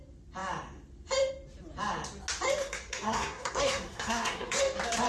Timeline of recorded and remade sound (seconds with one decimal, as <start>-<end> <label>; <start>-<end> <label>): 0.0-2.6 recorded; 2.6-4.6 remade; 4.6-5.1 recorded